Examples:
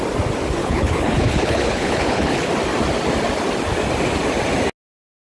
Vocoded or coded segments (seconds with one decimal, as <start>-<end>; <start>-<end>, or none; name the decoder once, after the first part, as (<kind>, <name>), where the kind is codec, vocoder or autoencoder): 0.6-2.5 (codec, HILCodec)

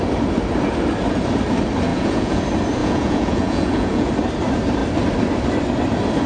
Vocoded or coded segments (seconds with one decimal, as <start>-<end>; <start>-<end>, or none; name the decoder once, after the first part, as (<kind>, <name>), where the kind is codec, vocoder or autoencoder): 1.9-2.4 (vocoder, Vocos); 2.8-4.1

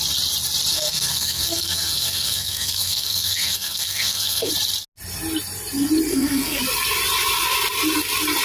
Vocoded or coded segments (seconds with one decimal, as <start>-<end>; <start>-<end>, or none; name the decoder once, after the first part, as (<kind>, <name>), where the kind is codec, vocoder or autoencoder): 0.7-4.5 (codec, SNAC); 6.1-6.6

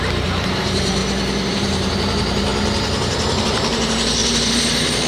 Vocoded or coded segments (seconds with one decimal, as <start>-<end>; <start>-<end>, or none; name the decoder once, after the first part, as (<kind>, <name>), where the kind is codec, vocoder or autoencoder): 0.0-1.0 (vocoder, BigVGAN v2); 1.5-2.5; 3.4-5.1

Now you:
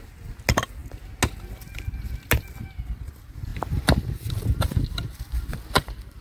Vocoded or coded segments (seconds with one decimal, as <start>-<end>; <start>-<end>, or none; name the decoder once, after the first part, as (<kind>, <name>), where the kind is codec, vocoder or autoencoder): 3.5-4.8 (vocoder, BigVGAN v2); 5.5-6.2

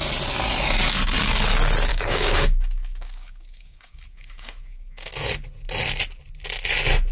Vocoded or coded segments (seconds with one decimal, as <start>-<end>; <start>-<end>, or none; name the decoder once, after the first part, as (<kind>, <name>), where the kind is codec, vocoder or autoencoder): 1.9-5.1 (codec, DAC)